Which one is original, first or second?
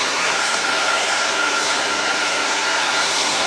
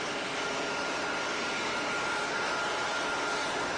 second